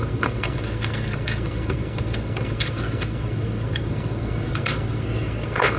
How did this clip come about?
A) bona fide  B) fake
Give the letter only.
B